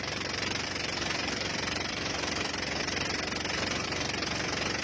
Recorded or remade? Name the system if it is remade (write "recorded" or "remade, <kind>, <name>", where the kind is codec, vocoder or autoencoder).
recorded